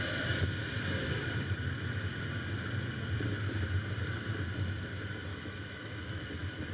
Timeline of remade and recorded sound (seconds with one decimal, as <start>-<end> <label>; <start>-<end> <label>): 0.0-5.3 recorded; 5.3-6.3 remade; 6.3-6.7 recorded